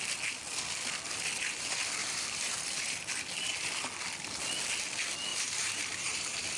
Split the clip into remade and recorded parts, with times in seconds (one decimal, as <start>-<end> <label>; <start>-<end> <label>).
0.0-2.0 recorded; 2.0-3.1 remade; 3.1-5.3 recorded; 5.3-6.6 remade